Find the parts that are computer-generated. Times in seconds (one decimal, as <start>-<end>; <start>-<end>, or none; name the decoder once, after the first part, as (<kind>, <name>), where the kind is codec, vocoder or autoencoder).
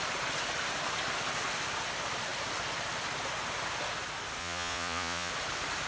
4.4-5.3 (vocoder, Vocos)